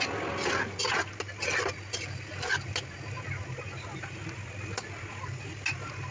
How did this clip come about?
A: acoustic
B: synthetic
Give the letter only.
A